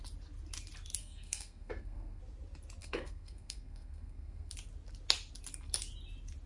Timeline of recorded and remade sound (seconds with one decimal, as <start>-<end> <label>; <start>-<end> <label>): 0.0-1.0 recorded; 1.0-2.2 remade; 2.2-2.8 recorded; 2.8-4.5 remade; 4.5-6.5 recorded